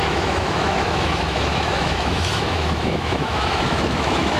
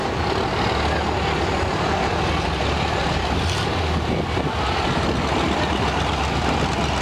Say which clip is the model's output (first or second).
first